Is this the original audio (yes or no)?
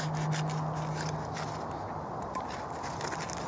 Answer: yes